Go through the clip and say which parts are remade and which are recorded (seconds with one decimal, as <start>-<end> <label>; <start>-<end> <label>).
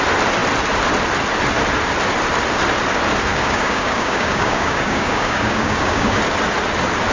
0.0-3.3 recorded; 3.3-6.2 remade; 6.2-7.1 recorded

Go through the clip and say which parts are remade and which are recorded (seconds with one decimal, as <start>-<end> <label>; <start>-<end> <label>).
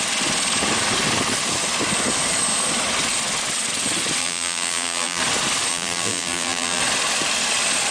0.0-4.2 recorded; 4.2-5.2 remade; 5.2-5.7 recorded; 5.7-6.8 remade; 6.8-7.9 recorded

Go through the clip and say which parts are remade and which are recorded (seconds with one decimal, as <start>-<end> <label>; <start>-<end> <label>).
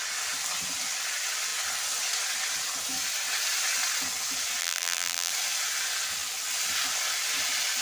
0.0-4.6 recorded; 4.6-5.3 remade; 5.3-7.8 recorded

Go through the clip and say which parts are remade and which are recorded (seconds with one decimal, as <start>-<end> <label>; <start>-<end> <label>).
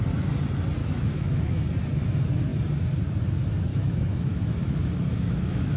0.0-0.8 recorded; 0.8-1.6 remade; 1.6-3.7 recorded; 3.7-5.8 remade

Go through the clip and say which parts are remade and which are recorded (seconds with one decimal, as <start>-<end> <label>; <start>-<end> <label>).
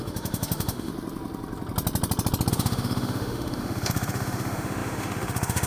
0.0-0.9 remade; 0.9-2.5 recorded; 2.5-5.7 remade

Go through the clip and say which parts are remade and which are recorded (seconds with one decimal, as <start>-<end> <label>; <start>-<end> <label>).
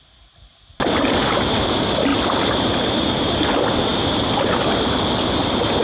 0.0-5.8 recorded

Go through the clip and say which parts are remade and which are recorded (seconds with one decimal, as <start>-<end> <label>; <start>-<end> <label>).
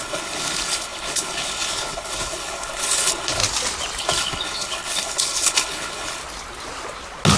0.0-3.4 remade; 3.4-4.0 recorded; 4.0-6.2 remade; 6.2-7.4 recorded